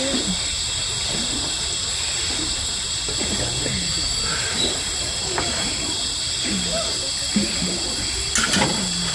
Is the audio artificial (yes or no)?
no